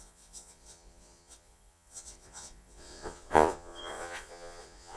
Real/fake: fake